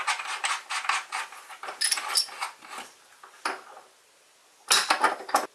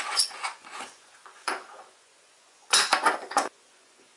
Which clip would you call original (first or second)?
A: first